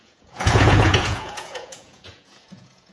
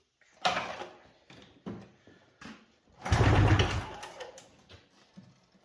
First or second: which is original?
second